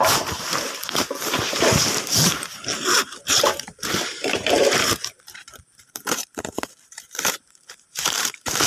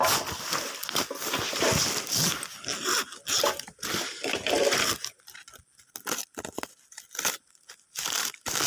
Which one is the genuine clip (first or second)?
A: second